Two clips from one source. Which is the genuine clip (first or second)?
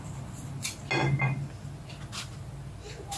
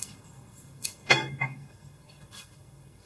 first